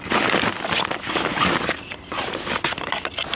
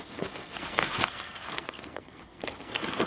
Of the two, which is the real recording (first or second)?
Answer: first